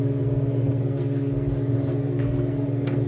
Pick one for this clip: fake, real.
fake